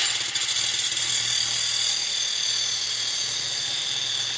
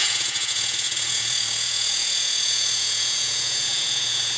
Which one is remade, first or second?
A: second